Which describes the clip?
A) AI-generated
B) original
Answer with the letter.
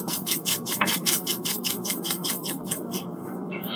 A